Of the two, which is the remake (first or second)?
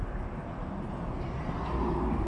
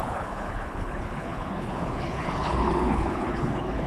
second